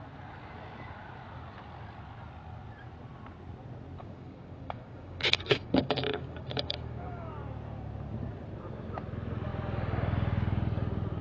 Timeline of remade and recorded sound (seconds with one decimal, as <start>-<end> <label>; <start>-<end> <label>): 0.0-4.0 recorded; 4.0-7.3 remade; 7.3-11.2 recorded